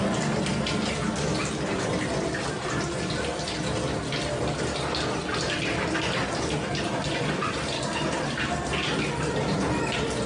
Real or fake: real